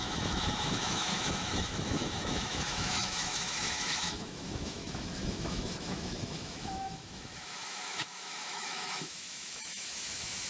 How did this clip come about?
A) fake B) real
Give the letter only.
A